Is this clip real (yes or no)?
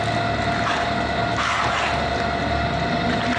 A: yes